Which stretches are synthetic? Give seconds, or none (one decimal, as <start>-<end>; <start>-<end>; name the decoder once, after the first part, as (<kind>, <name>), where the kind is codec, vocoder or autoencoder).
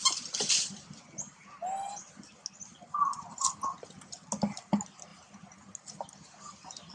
none